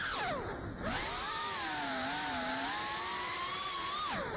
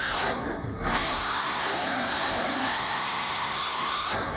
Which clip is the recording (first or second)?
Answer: first